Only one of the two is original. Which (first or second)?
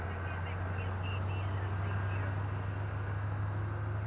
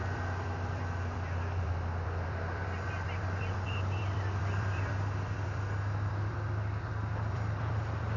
first